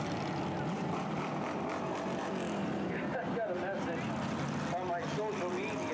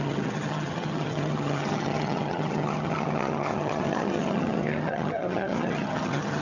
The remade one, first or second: second